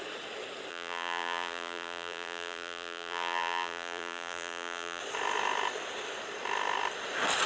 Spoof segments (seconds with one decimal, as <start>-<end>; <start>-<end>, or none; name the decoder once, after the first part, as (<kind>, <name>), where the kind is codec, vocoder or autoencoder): 0.7-5.0 (vocoder, BigVGAN v2)